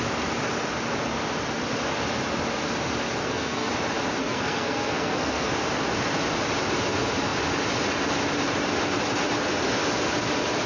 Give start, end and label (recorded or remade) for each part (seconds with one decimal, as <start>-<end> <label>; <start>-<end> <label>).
0.0-3.2 recorded; 3.2-3.7 remade; 3.7-4.2 recorded; 4.2-5.5 remade; 5.5-10.7 recorded